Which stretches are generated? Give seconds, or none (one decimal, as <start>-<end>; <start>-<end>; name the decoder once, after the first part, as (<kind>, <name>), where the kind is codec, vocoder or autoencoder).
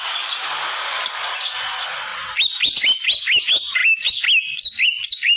none